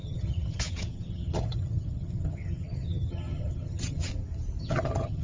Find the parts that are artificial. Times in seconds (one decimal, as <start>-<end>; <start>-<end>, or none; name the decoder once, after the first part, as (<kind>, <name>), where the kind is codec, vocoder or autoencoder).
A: 0.0-4.1 (vocoder, HiFi-GAN); 4.6-5.2